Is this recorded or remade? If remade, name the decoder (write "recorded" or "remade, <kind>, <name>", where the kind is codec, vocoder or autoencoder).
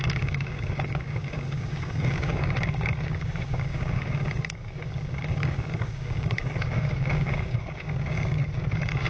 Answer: remade, codec, DAC